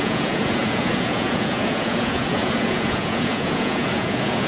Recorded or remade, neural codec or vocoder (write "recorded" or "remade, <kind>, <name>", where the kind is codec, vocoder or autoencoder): remade, vocoder, Vocos